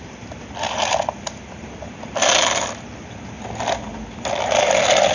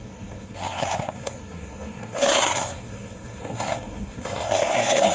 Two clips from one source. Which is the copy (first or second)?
second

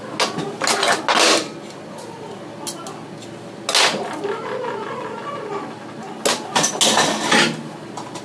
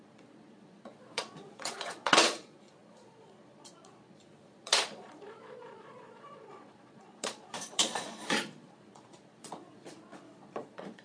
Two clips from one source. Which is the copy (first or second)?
second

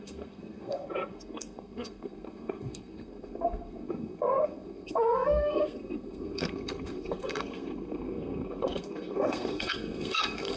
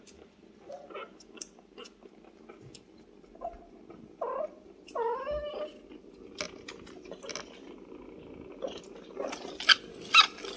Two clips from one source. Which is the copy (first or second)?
first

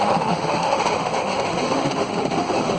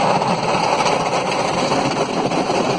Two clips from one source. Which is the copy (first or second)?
first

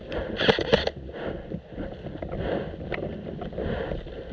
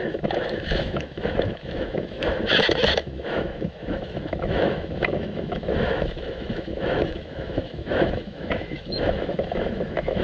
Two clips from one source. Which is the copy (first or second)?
second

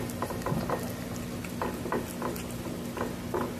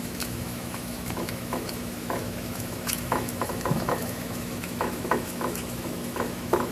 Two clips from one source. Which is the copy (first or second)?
second